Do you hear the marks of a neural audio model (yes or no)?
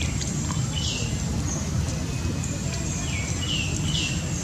no